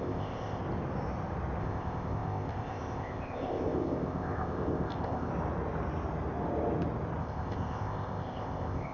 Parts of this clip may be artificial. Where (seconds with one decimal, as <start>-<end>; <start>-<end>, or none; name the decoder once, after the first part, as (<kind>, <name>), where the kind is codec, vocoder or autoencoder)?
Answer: 0.0-0.6 (codec, ZipCodec); 1.6-5.3; 7.2-8.9